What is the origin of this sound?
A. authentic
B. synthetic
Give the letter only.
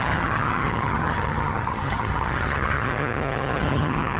B